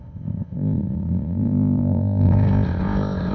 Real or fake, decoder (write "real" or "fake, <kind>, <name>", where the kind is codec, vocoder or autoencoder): fake, codec, ZipCodec